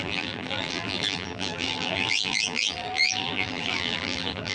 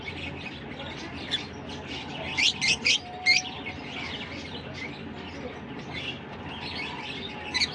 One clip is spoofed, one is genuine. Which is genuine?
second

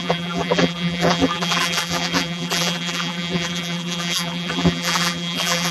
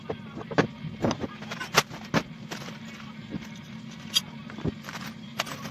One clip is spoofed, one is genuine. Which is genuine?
second